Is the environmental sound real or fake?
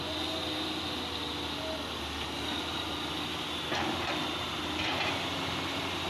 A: real